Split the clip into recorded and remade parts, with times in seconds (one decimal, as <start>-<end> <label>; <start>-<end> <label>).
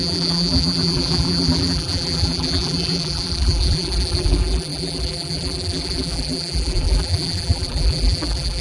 0.0-8.6 remade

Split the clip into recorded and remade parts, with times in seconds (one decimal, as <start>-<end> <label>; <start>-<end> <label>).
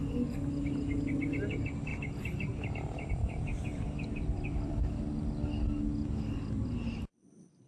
0.0-1.9 recorded; 1.9-3.1 remade; 3.1-3.6 recorded; 3.6-5.0 remade; 5.0-7.7 recorded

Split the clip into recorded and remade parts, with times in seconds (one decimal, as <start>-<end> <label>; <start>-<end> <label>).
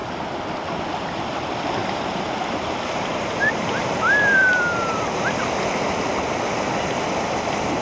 0.0-1.8 recorded; 1.8-5.0 remade; 5.0-7.8 recorded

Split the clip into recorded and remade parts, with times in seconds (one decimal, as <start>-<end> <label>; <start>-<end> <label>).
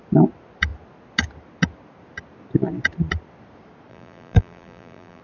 0.0-3.9 recorded; 3.9-5.2 remade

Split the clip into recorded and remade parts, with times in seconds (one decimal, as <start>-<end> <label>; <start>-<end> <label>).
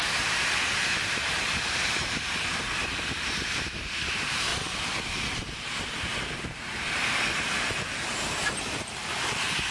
0.0-4.5 remade; 4.5-5.3 recorded; 5.3-9.7 remade